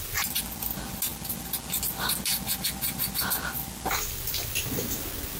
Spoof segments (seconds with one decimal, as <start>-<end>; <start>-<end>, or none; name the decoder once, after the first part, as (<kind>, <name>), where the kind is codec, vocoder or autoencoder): none